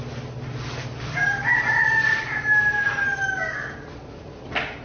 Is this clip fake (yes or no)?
no